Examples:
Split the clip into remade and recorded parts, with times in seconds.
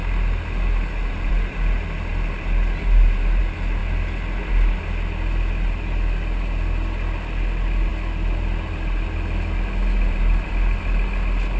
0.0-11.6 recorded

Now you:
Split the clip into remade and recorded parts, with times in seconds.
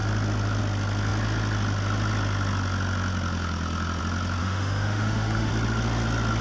0.0-4.4 recorded; 4.4-5.5 remade; 5.5-6.4 recorded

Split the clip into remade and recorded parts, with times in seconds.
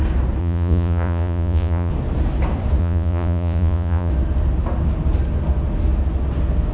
0.0-0.4 recorded; 0.4-1.9 remade; 1.9-2.8 recorded; 2.8-4.1 remade; 4.1-6.7 recorded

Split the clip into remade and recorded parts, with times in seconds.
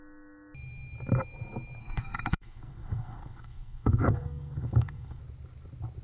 0.0-1.8 recorded; 1.8-5.2 remade; 5.2-6.0 recorded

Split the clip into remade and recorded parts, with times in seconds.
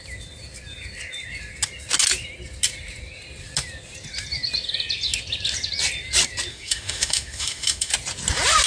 0.0-6.5 recorded; 6.5-7.9 remade; 7.9-8.7 recorded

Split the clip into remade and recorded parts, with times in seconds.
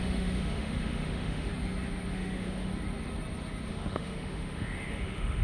0.0-1.5 remade; 1.5-2.1 recorded; 2.1-2.7 remade; 2.7-3.7 recorded; 3.7-5.4 remade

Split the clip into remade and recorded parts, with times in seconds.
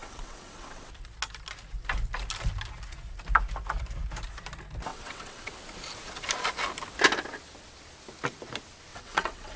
0.0-0.9 remade; 0.9-4.9 recorded; 4.9-5.5 remade; 5.5-8.9 recorded; 8.9-9.6 remade